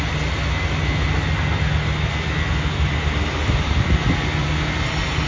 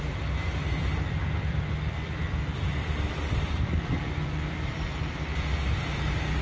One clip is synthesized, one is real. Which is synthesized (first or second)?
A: second